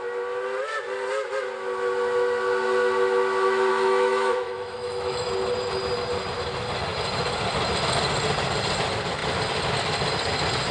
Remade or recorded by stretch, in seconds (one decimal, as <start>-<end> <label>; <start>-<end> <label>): 0.0-3.7 recorded; 3.7-5.3 remade; 5.3-10.7 recorded